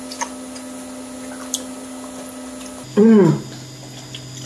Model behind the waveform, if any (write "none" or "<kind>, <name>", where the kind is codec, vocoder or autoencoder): none